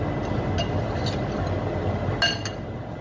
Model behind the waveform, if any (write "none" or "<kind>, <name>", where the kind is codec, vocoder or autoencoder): none